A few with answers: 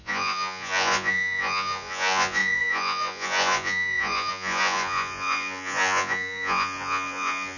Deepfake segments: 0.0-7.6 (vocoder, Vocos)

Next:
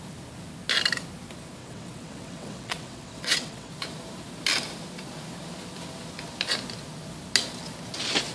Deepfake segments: 1.6-3.7 (vocoder, WaveNeXt)

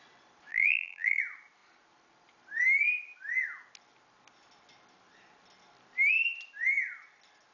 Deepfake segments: 0.5-1.2 (vocoder, BigVGAN v2)

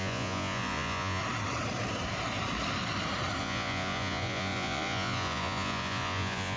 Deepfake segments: 0.0-1.2 (vocoder, Vocos); 3.4-6.6

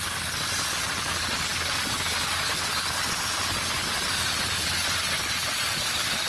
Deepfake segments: none

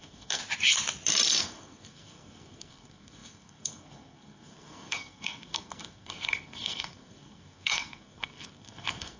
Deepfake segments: 0.0-0.4 (codec, SNAC); 1.4-9.2

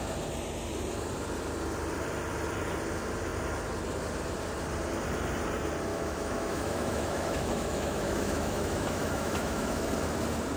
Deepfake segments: 5.9-9.9 (autoencoder, DAC-VAE)

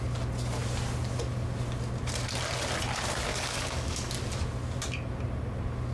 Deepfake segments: 3.3-4.1 (codec, DAC)